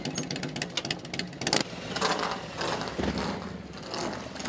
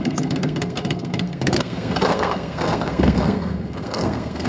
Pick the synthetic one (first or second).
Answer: second